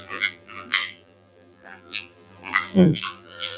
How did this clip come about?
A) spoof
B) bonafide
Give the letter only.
A